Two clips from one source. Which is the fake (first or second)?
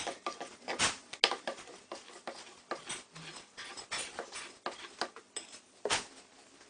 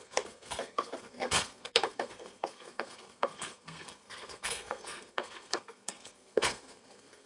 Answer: second